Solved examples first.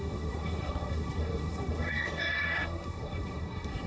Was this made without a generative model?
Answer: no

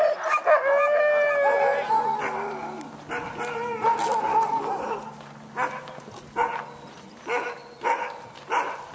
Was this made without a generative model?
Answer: yes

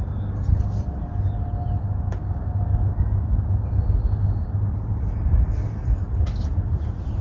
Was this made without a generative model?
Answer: yes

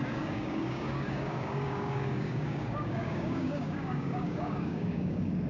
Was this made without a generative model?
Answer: no